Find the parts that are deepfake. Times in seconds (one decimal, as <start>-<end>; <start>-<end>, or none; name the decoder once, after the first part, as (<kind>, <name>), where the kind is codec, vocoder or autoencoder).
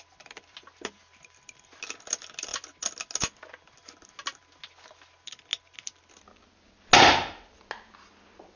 none